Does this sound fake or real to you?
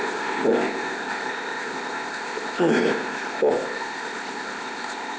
fake